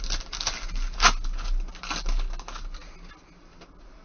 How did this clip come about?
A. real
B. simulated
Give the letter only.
A